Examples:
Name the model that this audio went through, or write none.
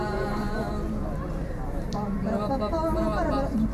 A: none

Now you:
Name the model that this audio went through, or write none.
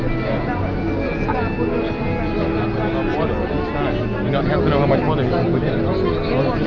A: none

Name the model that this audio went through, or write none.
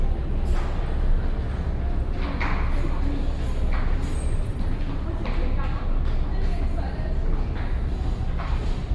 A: none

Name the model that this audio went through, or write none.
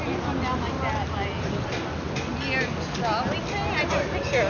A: none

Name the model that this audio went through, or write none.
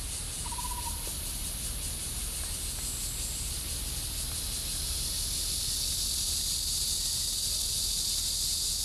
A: none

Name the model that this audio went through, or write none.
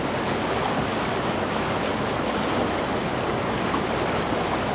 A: none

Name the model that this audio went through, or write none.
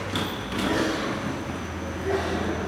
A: none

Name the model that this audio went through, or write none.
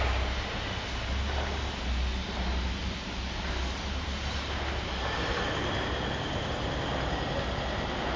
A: none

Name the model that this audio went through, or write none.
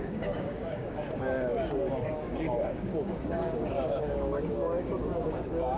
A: codec, DAC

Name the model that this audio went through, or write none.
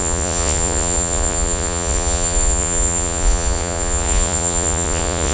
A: vocoder, Vocos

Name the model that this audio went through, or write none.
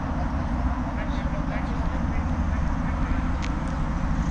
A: none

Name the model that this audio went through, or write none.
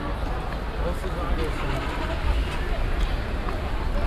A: none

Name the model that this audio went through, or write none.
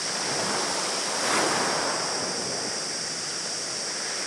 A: none